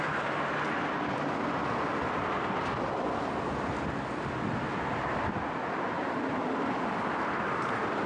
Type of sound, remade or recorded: recorded